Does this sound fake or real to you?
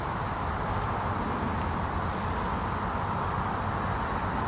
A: real